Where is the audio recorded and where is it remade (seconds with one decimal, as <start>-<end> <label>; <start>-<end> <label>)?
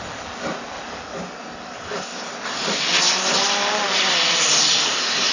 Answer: 0.0-5.3 recorded